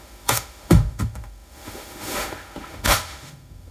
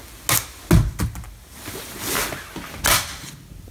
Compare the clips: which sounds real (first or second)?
second